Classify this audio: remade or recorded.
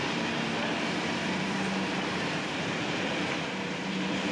remade